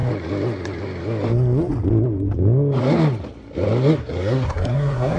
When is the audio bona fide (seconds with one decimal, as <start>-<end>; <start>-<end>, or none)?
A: 0.0-4.0